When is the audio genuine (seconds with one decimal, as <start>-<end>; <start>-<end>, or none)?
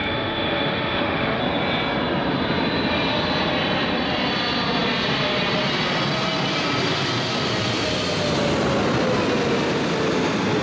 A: 1.4-10.6